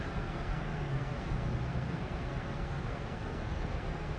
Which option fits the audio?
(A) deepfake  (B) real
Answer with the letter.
A